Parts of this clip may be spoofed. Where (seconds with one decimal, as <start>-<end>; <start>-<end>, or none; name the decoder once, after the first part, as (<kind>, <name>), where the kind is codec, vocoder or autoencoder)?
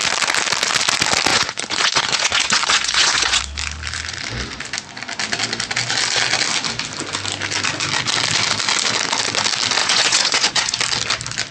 1.3-3.4 (vocoder, Vocos); 9.8-10.8